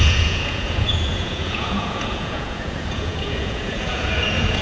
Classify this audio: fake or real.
fake